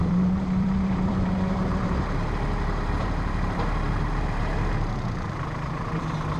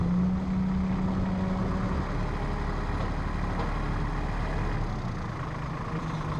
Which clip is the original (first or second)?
second